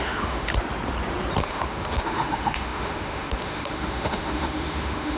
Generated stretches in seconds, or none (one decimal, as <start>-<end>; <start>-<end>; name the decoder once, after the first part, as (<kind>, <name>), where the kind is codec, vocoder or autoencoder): 0.0-0.5 (autoencoder, DAC-VAE); 1.4-5.2